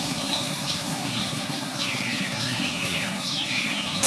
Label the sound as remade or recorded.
remade